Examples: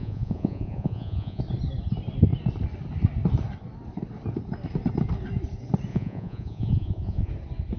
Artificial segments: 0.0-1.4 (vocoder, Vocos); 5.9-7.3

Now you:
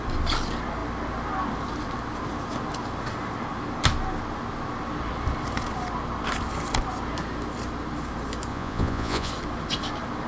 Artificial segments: 8.5-9.3 (vocoder, Vocos)

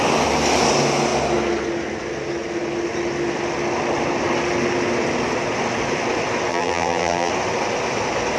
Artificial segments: 6.5-7.3 (vocoder, BigVGAN v2)

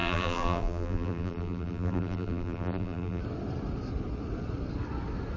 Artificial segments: 0.0-3.2 (vocoder, BigVGAN v2)

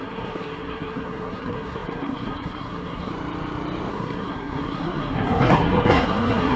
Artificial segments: 0.0-3.1 (codec, SNAC); 3.9-6.6

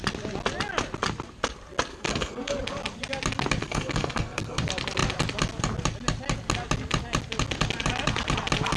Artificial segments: 1.9-2.6 (codec, SNAC); 3.6-4.6